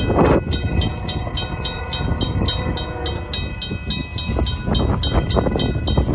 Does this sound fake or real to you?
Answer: real